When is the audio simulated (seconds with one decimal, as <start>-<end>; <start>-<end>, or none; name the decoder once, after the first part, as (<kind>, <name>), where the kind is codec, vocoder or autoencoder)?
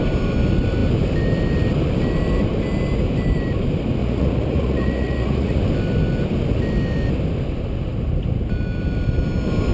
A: 4.0-5.6 (vocoder, Vocos)